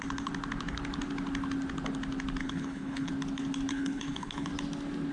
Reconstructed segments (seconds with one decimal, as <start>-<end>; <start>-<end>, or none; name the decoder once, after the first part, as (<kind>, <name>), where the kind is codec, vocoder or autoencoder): 2.4-3.1 (codec, HILCodec); 3.7-4.5